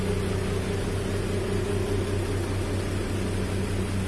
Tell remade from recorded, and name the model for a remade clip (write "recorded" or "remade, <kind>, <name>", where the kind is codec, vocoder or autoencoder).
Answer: recorded